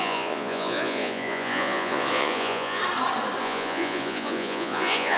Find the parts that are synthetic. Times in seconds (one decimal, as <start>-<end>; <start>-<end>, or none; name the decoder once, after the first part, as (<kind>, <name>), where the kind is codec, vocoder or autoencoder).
0.0-2.8 (vocoder, Vocos); 3.4-5.2